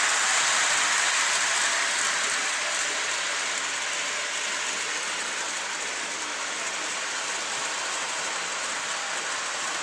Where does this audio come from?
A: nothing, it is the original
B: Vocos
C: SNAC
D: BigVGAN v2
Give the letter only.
A